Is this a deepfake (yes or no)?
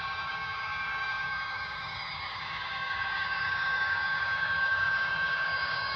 yes